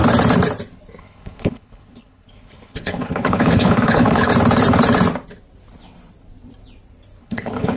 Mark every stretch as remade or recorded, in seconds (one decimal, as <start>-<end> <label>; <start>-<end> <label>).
0.0-1.0 recorded; 1.0-4.3 remade; 4.3-7.2 recorded; 7.2-7.8 remade